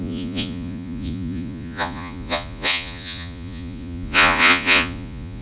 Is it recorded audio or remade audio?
remade